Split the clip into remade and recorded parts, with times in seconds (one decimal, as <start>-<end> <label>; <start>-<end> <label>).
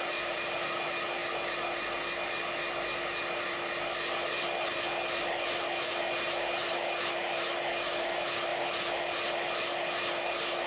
0.0-10.7 recorded